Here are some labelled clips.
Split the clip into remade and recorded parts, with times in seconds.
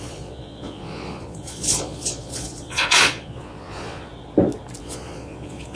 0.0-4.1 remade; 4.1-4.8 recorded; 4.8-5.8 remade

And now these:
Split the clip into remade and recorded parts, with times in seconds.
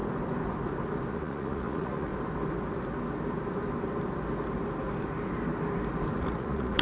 0.0-1.1 recorded; 1.1-2.1 remade; 2.1-6.2 recorded; 6.2-6.8 remade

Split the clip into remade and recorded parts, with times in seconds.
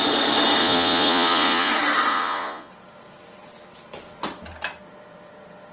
0.0-0.6 recorded; 0.6-1.7 remade; 1.7-2.1 recorded; 2.1-2.7 remade; 2.7-5.7 recorded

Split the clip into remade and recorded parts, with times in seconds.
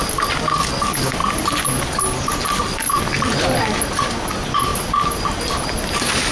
0.0-6.3 recorded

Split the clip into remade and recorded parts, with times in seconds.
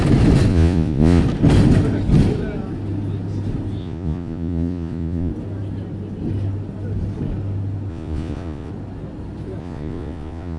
0.0-0.5 recorded; 0.5-1.2 remade; 1.2-3.8 recorded; 3.8-5.3 remade; 5.3-7.9 recorded; 7.9-8.7 remade; 8.7-9.6 recorded; 9.6-10.6 remade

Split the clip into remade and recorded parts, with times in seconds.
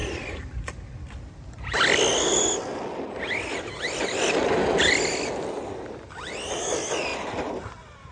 0.0-8.1 recorded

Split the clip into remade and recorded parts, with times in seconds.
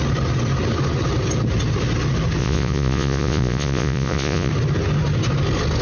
0.0-2.4 recorded; 2.4-4.5 remade; 4.5-5.8 recorded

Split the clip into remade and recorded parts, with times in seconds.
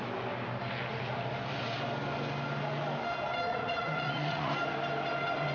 0.0-3.5 recorded; 3.5-4.5 remade; 4.5-5.5 recorded